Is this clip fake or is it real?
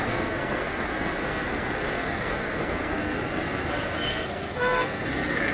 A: fake